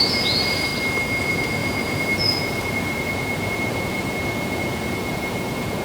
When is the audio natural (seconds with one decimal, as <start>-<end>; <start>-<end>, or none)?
0.7-1.2